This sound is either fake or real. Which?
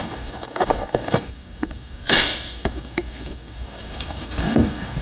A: fake